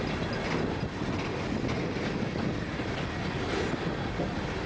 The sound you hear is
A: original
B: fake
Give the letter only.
A